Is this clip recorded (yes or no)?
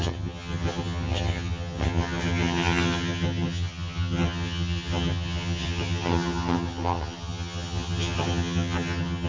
no